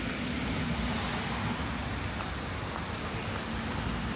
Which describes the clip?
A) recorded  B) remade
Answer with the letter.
A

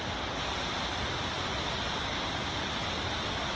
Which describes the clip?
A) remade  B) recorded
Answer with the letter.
B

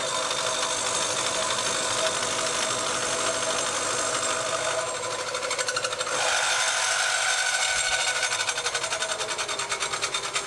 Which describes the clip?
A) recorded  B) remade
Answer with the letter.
A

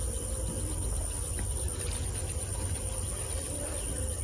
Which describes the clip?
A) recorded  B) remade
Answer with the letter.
A